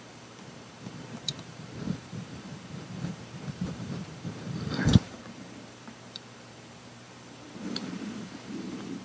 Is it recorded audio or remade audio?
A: remade